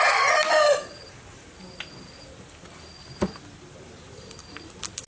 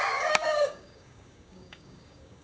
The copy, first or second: second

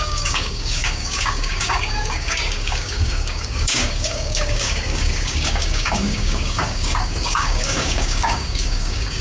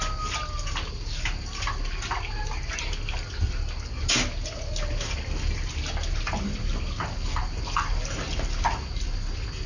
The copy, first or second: first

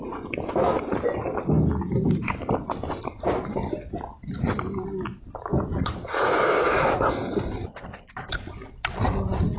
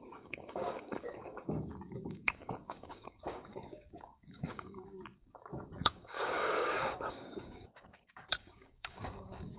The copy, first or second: second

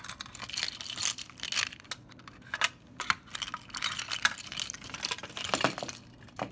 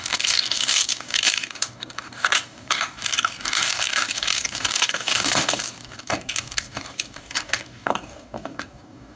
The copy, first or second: second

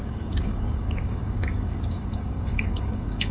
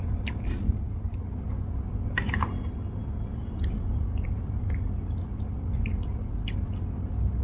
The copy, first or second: first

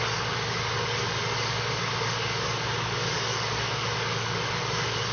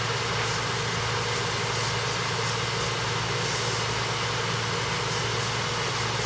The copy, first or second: first